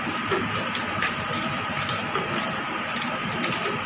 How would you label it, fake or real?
real